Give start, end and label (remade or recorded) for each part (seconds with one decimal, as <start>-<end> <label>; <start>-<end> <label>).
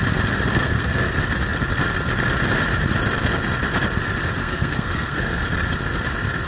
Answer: 0.0-0.5 recorded; 0.5-1.1 remade; 1.1-4.4 recorded; 4.4-5.4 remade; 5.4-6.5 recorded